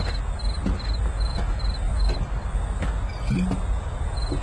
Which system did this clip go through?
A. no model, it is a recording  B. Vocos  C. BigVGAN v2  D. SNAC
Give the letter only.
A